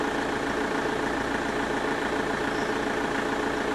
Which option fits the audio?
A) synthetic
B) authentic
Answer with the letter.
B